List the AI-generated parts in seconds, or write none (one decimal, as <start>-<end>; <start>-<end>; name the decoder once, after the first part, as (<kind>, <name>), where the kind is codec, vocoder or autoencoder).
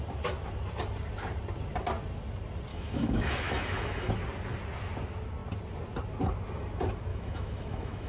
2.7-4.1 (autoencoder, DAC-VAE); 7.1-8.1